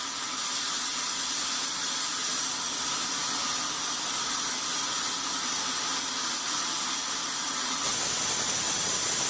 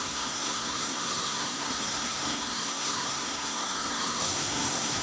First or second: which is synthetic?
second